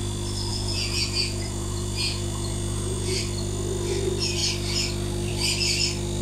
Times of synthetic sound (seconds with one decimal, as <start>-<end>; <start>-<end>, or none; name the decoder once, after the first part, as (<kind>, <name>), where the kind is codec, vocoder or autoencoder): 0.5-3.2 (vocoder, Vocos)